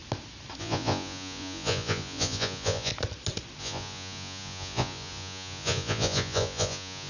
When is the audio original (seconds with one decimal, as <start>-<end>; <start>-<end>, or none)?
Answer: 0.0-0.6; 2.9-3.6